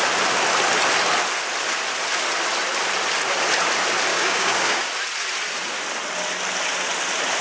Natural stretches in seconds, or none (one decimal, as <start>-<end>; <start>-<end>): 0.0-4.1; 4.9-7.4